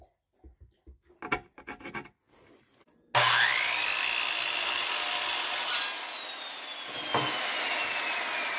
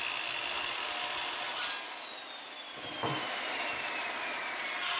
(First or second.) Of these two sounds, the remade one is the second